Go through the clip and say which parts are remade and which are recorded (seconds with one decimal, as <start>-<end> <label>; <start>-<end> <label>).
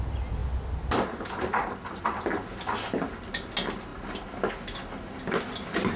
0.0-6.0 recorded